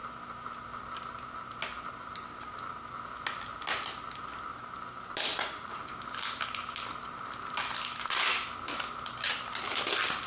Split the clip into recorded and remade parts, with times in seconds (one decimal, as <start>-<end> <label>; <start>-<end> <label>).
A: 0.0-5.3 recorded; 5.3-5.8 remade; 5.8-10.3 recorded